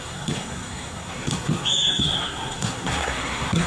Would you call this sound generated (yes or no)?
yes